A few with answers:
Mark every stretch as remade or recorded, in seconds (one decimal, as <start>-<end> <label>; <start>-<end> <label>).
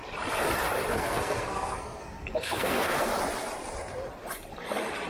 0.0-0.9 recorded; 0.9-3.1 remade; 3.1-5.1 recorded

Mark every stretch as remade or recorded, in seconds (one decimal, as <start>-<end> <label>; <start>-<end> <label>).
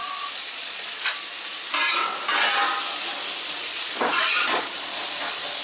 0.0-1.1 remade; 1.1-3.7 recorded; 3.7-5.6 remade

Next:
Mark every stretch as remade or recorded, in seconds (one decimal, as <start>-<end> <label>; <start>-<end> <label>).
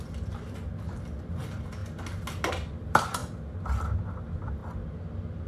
0.0-1.8 remade; 1.8-2.5 recorded; 2.5-3.2 remade; 3.2-4.1 recorded; 4.1-4.6 remade; 4.6-5.5 recorded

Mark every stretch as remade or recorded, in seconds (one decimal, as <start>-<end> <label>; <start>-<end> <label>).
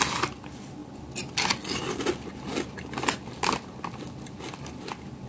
0.0-5.3 recorded